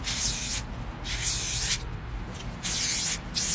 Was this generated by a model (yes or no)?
no